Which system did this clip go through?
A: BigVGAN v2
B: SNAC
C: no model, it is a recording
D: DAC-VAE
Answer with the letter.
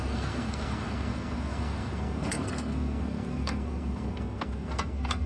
B